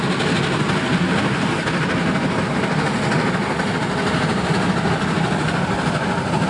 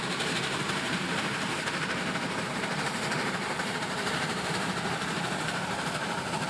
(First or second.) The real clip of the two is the first